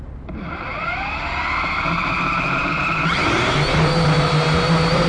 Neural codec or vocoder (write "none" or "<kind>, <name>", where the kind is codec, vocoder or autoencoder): vocoder, BigVGAN v2